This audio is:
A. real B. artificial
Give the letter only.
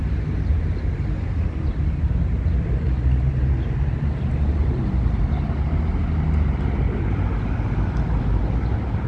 A